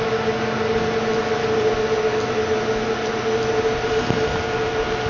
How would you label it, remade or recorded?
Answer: recorded